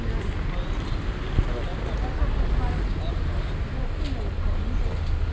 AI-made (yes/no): no